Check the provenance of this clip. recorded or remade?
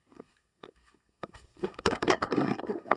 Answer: remade